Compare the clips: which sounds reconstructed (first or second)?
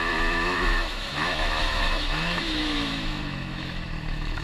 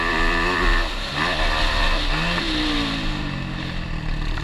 first